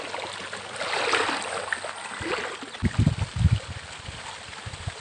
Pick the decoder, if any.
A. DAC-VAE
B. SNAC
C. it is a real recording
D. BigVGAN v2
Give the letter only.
C